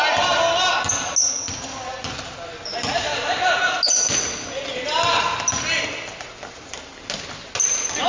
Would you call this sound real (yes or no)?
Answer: yes